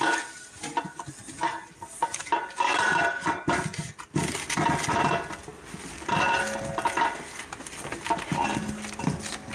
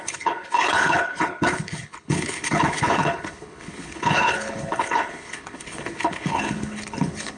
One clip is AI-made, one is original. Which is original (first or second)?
first